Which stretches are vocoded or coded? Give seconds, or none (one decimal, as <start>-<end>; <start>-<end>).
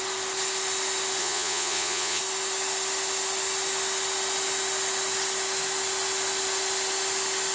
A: 1.2-2.2